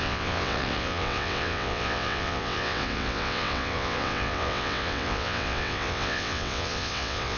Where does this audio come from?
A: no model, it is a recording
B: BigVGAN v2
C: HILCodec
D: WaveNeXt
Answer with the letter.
D